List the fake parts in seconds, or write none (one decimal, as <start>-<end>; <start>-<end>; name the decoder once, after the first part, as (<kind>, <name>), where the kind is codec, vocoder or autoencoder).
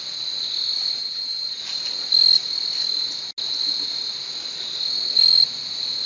1.0-1.6 (vocoder, HiFi-GAN)